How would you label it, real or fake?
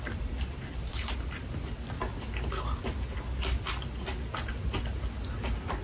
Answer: real